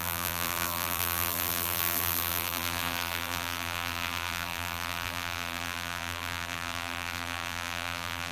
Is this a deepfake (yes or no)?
yes